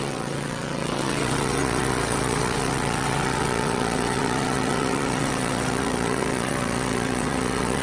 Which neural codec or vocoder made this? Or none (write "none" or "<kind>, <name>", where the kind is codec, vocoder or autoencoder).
vocoder, WaveNeXt